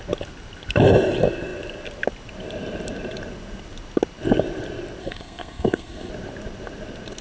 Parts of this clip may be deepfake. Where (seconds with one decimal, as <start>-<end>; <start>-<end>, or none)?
5.0-6.1